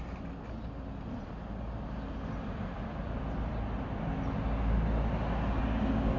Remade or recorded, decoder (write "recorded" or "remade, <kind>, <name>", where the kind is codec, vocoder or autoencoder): recorded